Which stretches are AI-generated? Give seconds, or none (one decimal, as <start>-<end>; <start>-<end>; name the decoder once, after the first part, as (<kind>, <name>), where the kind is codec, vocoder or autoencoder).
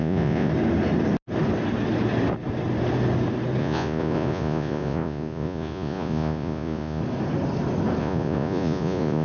0.0-0.5 (vocoder, Vocos); 3.6-7.0; 8.0-9.2